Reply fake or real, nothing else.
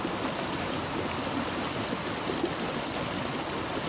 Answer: real